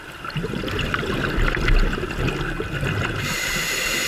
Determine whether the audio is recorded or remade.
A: recorded